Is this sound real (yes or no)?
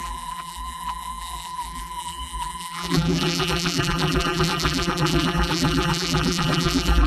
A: no